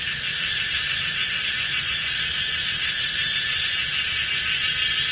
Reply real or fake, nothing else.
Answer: fake